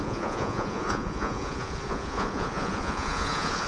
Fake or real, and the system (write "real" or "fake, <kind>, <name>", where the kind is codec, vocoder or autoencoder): fake, vocoder, Vocos